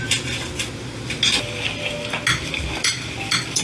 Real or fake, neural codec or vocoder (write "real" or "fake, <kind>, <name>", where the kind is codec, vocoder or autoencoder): real